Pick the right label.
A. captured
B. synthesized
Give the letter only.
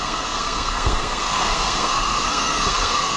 B